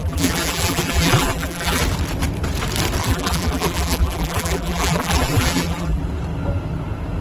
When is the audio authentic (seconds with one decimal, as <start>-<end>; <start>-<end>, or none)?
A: 1.8-3.0; 6.0-7.2

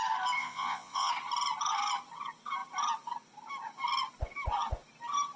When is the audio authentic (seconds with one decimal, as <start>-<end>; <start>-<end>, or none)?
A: 0.0-0.4; 1.1-5.4

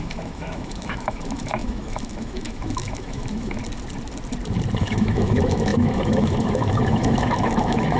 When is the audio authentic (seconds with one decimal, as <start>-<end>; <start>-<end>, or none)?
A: 3.6-4.8

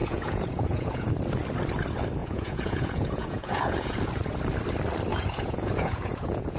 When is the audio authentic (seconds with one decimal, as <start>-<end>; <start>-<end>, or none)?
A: 1.1-2.2; 4.0-5.1